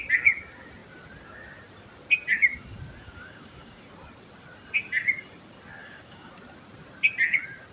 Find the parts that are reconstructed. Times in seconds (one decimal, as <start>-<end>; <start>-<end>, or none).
3.0-3.8; 5.8-6.3